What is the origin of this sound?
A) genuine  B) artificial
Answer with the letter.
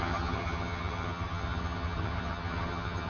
B